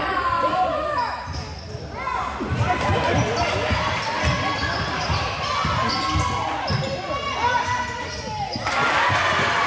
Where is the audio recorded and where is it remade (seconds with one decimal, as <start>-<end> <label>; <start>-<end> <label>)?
0.0-9.7 recorded